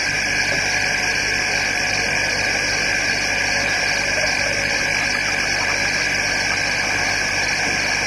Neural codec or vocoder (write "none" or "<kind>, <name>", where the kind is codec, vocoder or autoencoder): none